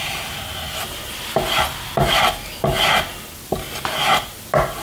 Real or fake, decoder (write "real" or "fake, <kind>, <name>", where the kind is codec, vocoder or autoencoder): real